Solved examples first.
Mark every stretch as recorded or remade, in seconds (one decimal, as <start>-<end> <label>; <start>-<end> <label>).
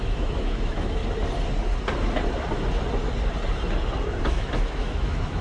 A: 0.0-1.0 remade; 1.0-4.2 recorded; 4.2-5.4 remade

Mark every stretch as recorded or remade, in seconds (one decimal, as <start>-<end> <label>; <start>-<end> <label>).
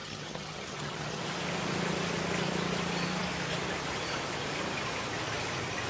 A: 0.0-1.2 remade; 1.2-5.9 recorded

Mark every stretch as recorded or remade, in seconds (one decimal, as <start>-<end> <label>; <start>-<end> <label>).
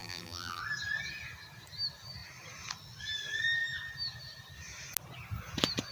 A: 0.0-0.6 remade; 0.6-5.9 recorded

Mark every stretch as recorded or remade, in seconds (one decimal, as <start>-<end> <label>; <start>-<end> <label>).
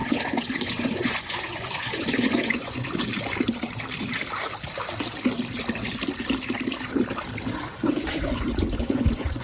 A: 0.0-3.1 remade; 3.1-7.5 recorded; 7.5-9.4 remade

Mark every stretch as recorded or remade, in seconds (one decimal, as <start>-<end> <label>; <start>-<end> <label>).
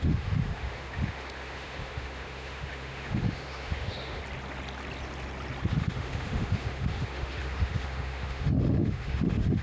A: 0.0-4.2 remade; 4.2-5.7 recorded; 5.7-9.6 remade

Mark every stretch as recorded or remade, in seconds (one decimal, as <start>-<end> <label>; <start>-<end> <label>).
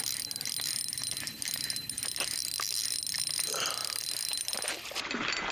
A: 0.0-5.5 recorded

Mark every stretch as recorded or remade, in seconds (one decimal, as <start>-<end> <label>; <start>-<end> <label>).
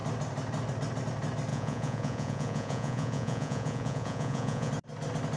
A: 0.0-1.5 recorded; 1.5-4.7 remade; 4.7-5.4 recorded